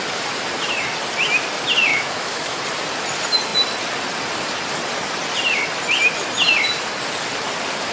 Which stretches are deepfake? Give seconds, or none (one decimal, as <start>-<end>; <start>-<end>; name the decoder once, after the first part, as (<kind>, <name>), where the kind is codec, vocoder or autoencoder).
1.9-2.6 (autoencoder, DAC-VAE)